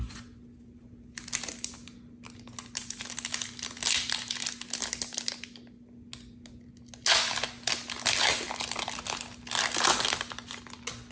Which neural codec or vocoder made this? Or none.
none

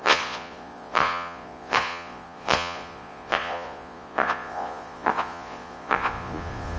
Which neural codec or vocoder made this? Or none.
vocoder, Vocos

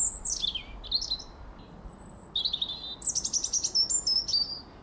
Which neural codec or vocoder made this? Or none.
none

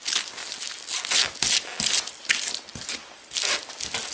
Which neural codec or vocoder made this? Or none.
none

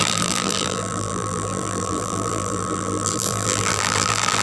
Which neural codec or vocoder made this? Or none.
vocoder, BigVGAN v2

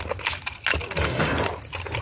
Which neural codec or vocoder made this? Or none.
none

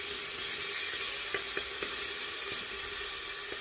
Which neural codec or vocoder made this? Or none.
none